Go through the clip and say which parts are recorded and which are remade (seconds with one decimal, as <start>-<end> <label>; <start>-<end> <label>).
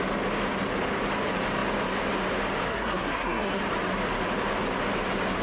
0.0-2.7 recorded; 2.7-3.6 remade; 3.6-5.4 recorded